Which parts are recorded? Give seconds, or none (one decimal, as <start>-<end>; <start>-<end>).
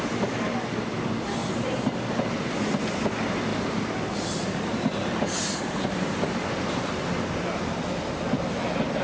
0.0-1.4; 2.9-3.5; 7.8-9.0